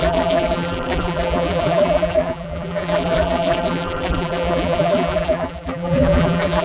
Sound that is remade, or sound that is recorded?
remade